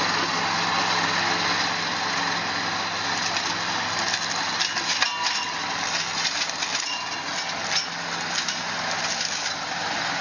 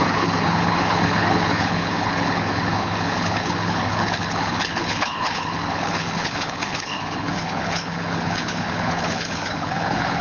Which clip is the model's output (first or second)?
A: second